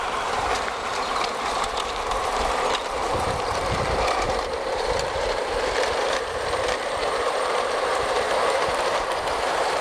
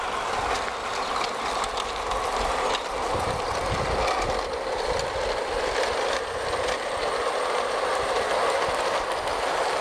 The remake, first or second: first